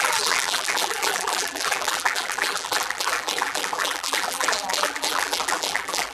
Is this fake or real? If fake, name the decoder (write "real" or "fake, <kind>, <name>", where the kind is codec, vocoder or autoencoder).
fake, vocoder, BigVGAN v2